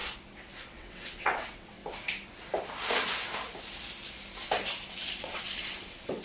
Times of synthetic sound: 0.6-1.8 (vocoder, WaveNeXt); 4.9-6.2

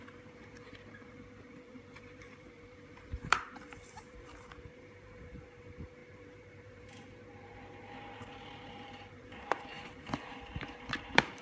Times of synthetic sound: 0.0-11.4 (vocoder, BigVGAN v2)

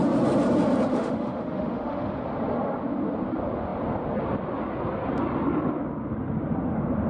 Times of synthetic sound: 0.9-2.2 (autoencoder, DAC-VAE)

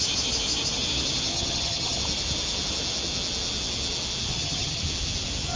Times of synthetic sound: 1.3-2.0 (vocoder, HiFi-GAN); 4.3-4.8

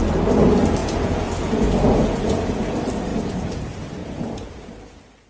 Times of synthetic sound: 0.8-2.7 (vocoder, Vocos); 3.1-3.6; 4.0-4.6

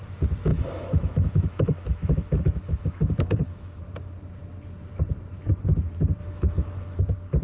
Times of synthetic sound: 0.5-3.8 (autoencoder, DAC-VAE); 6.2-7.0

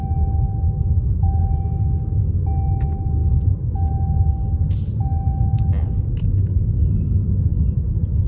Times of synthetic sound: none

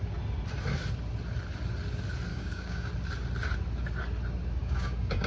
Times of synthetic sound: 2.3-2.9 (codec, DAC); 4.6-5.3